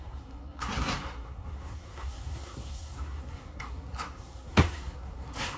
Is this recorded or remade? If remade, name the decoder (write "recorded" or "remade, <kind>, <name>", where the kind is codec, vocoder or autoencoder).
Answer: remade, codec, SNAC